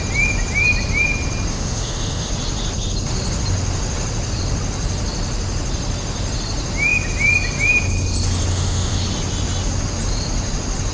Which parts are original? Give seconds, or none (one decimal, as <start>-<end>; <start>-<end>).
0.0-1.5; 2.3-8.5; 9.0-10.9